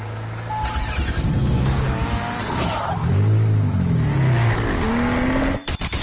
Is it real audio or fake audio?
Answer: real